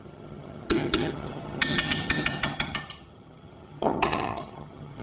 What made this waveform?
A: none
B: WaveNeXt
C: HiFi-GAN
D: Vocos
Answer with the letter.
C